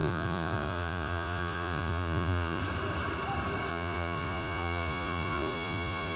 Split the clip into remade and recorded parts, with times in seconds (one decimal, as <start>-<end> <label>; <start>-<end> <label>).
0.0-2.6 remade; 2.6-3.7 recorded; 3.7-6.2 remade

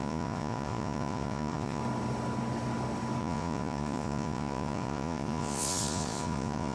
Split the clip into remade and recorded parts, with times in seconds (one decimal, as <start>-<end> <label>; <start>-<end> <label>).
0.0-1.8 remade; 1.8-3.2 recorded; 3.2-6.7 remade

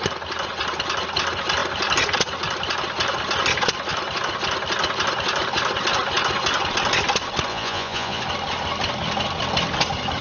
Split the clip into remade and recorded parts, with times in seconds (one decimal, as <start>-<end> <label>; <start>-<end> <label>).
0.0-7.5 recorded; 7.5-8.2 remade; 8.2-10.2 recorded

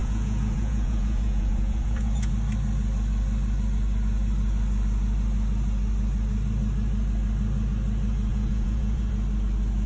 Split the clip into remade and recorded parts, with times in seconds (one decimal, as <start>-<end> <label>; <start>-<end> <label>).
0.0-2.3 remade; 2.3-8.3 recorded; 8.3-9.1 remade; 9.1-9.9 recorded

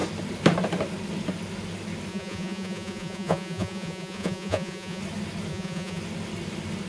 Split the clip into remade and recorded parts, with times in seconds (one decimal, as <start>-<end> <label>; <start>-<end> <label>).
0.0-2.1 recorded; 2.1-5.0 remade; 5.0-5.5 recorded; 5.5-6.0 remade; 6.0-6.9 recorded

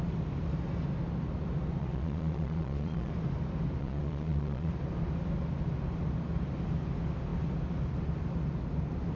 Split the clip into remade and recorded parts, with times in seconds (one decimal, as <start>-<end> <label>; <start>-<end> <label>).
0.0-1.8 recorded; 1.8-3.1 remade; 3.1-3.8 recorded; 3.8-4.7 remade; 4.7-9.2 recorded

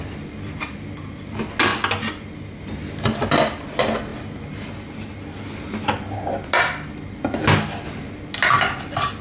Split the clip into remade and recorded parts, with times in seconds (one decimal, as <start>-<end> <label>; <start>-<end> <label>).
0.0-9.2 recorded